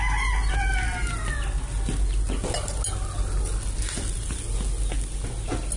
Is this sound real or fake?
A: real